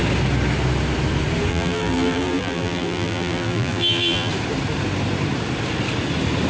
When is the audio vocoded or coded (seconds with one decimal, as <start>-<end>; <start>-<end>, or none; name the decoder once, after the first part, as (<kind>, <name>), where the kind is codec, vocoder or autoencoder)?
1.5-4.3 (vocoder, BigVGAN v2)